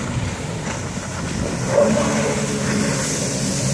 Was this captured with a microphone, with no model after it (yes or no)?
yes